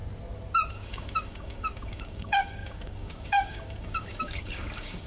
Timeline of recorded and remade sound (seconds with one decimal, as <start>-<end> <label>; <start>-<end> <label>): 0.0-0.7 recorded; 0.7-5.1 remade